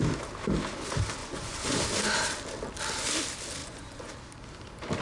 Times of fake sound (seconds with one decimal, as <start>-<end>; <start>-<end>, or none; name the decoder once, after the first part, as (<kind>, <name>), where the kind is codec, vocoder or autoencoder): 1.2-1.8 (vocoder, Vocos); 3.6-4.1